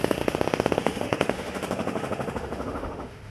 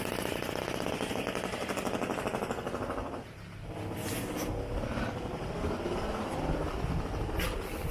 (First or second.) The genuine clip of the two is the second